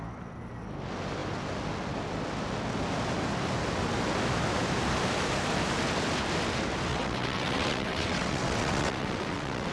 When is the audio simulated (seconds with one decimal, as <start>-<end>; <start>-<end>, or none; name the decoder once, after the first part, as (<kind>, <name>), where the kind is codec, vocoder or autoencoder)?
6.9-9.7 (vocoder, WaveNeXt)